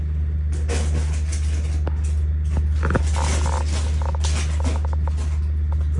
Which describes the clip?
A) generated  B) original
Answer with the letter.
B